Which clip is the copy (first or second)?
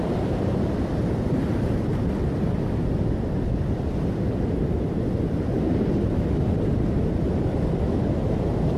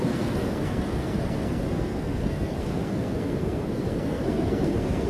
second